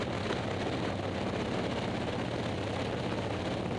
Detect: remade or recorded recorded